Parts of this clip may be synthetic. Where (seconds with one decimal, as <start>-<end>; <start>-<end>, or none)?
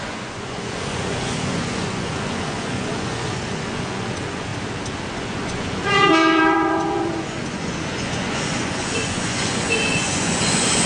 0.0-4.5; 5.1-10.9